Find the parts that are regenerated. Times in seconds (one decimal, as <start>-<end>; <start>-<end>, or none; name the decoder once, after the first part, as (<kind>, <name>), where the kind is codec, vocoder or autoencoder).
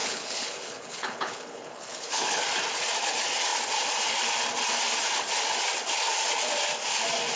0.0-2.4 (codec, HILCodec)